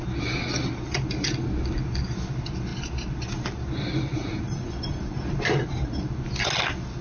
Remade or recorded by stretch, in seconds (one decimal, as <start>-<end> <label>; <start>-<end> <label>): 0.0-4.1 recorded; 4.1-4.7 remade; 4.7-7.0 recorded